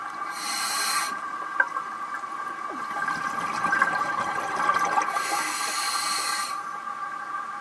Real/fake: real